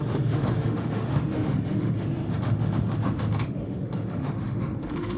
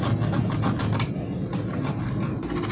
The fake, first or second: first